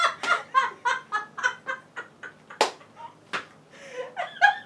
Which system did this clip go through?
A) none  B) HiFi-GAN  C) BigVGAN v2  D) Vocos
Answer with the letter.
A